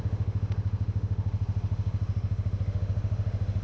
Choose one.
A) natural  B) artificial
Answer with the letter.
B